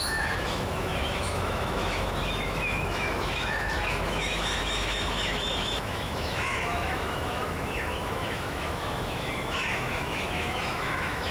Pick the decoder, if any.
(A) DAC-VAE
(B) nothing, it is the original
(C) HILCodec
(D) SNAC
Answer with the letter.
A